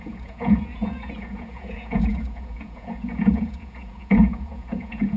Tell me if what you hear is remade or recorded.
remade